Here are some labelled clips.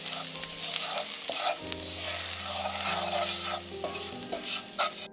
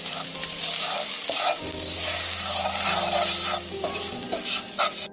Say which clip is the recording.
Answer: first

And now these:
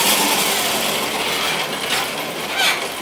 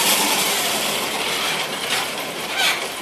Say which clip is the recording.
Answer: first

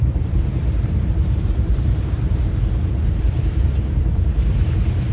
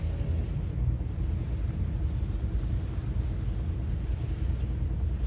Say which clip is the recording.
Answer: second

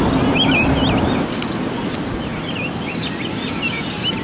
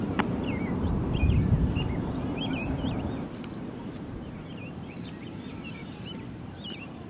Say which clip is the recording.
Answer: first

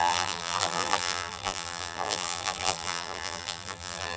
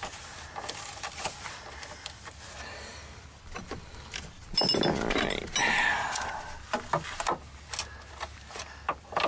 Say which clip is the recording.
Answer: second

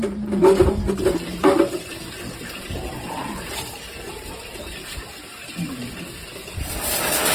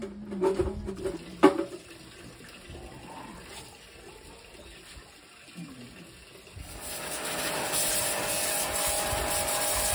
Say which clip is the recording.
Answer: second